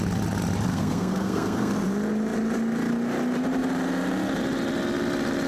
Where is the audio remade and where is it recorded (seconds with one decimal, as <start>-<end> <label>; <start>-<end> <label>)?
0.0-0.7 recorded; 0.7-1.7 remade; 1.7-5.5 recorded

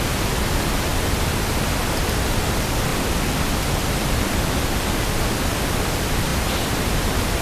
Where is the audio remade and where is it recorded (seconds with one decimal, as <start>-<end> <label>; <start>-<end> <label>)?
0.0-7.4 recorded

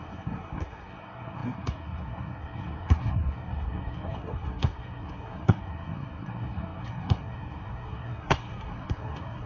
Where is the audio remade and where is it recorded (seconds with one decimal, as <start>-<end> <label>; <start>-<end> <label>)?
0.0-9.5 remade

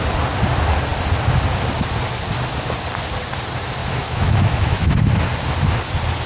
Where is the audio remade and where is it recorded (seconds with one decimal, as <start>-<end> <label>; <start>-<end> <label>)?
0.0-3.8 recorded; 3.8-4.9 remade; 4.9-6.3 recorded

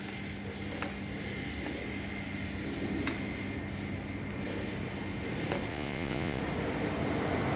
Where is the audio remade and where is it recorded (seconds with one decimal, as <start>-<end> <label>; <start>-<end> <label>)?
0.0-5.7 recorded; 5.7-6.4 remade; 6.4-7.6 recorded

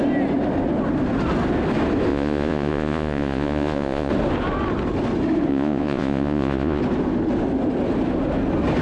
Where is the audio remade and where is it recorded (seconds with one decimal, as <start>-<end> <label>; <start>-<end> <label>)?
0.0-2.1 recorded; 2.1-4.1 remade; 4.1-5.5 recorded; 5.5-6.8 remade; 6.8-8.8 recorded

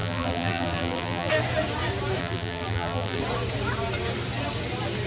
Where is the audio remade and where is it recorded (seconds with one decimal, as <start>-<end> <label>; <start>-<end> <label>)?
0.0-1.3 remade; 1.3-2.2 recorded; 2.2-3.2 remade; 3.2-5.1 recorded

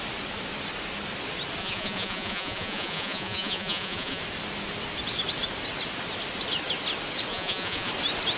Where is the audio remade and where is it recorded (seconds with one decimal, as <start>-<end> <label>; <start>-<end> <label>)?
0.0-1.6 recorded; 1.6-4.2 remade; 4.2-7.3 recorded; 7.3-7.9 remade; 7.9-8.4 recorded